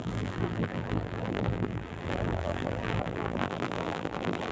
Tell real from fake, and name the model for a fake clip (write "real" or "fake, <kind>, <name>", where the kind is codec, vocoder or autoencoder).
fake, vocoder, BigVGAN v2